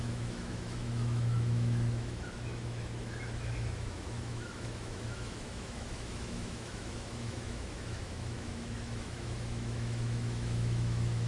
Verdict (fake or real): fake